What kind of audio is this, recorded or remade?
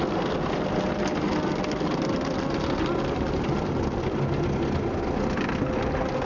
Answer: recorded